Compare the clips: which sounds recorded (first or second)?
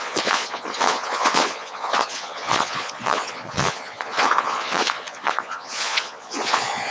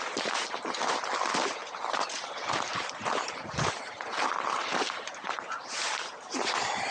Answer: second